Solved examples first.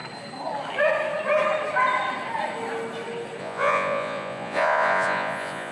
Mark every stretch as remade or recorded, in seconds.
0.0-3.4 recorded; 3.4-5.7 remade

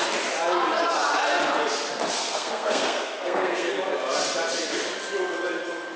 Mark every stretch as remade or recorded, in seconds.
0.0-2.2 recorded; 2.2-3.7 remade; 3.7-6.0 recorded

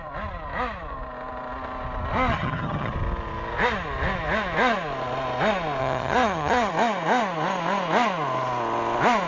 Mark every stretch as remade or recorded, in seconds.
0.0-2.3 recorded; 2.3-2.9 remade; 2.9-5.8 recorded; 5.8-6.7 remade; 6.7-9.3 recorded

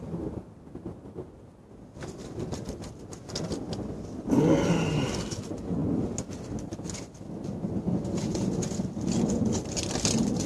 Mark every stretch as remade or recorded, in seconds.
0.0-10.5 recorded

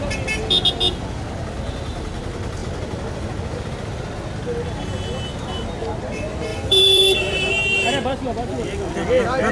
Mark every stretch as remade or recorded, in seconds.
0.0-6.5 recorded; 6.5-7.5 remade; 7.5-9.5 recorded